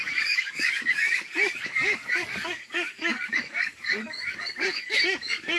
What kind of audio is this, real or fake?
fake